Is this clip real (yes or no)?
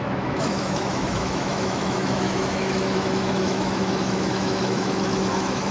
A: no